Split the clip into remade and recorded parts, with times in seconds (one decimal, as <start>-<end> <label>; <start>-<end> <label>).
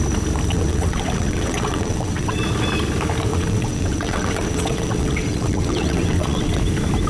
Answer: 0.0-0.5 recorded; 0.5-2.4 remade; 2.4-3.3 recorded; 3.3-6.6 remade; 6.6-7.1 recorded